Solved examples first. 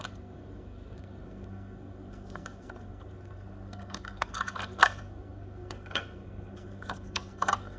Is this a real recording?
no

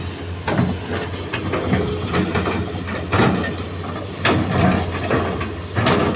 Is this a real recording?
yes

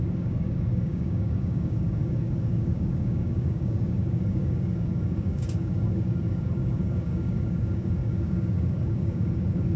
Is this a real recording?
no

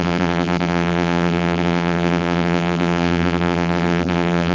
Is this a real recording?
no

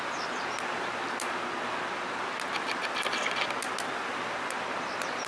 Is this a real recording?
yes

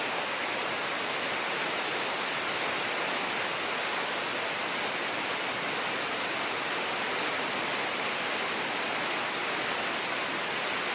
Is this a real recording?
yes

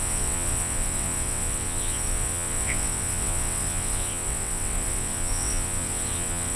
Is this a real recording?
no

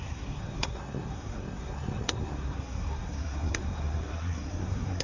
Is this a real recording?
no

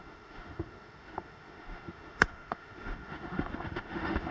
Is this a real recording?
no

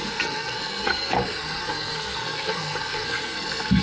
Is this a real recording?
no